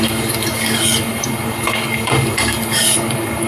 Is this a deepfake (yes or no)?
yes